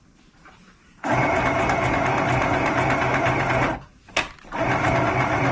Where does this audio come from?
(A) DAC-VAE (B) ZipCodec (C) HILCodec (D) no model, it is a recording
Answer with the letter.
D